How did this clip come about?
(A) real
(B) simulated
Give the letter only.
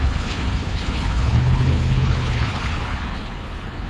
B